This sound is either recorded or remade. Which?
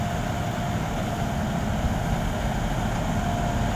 recorded